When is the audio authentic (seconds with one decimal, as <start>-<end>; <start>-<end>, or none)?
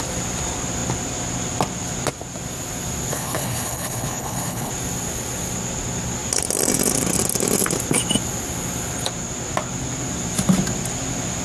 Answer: 0.0-3.1; 4.7-11.4